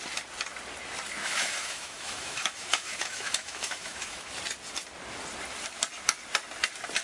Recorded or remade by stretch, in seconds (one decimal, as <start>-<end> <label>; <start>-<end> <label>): 0.0-1.2 recorded; 1.2-4.3 remade; 4.3-7.0 recorded